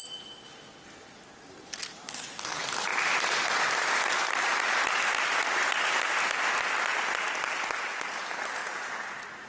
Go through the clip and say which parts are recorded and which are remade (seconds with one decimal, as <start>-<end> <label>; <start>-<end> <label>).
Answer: 0.0-9.5 recorded